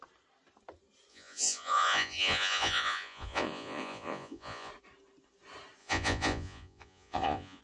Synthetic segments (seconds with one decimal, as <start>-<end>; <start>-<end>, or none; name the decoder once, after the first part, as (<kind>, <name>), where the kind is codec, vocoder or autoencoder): 1.1-4.7 (vocoder, Vocos); 5.8-7.6